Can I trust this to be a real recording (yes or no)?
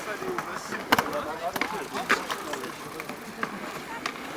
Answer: yes